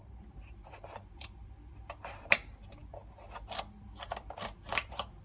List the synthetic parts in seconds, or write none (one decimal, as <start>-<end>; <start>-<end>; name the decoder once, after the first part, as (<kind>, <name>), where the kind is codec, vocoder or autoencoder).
none